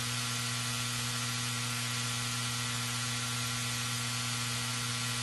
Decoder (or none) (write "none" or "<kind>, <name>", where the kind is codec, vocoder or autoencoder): none